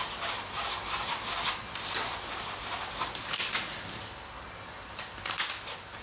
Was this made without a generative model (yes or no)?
yes